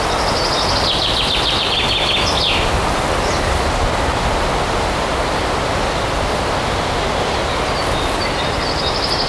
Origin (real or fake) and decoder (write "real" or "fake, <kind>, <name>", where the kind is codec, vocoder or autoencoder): real